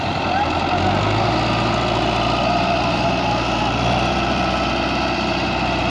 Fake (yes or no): yes